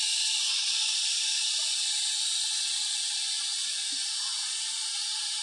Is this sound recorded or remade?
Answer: recorded